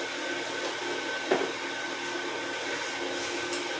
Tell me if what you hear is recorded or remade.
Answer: recorded